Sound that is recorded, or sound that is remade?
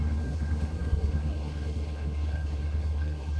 remade